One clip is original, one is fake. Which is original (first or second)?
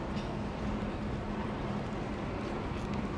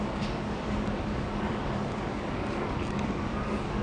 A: first